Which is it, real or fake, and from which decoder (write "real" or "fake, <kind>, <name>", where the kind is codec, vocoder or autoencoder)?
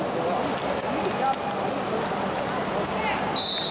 real